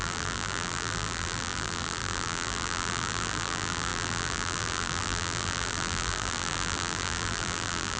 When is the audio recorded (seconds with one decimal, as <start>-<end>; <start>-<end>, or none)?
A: none